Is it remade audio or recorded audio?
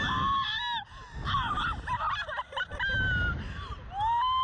recorded